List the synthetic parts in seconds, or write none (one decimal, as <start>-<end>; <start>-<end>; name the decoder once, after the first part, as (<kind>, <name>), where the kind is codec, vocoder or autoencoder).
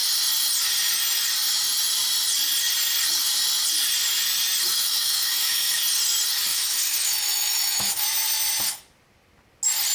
4.7-5.8 (autoencoder, DAC-VAE); 6.5-8.0